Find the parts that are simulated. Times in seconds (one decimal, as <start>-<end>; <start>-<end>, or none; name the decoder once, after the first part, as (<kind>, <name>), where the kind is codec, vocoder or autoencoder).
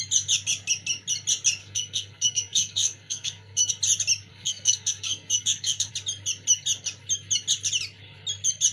1.6-3.7 (codec, SNAC); 4.3-5.9